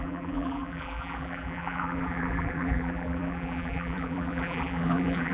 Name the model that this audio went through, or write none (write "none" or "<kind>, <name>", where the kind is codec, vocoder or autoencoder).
vocoder, BigVGAN v2